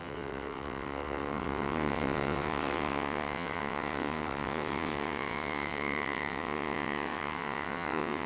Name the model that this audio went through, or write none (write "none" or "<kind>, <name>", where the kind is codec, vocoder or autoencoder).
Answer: vocoder, WaveNeXt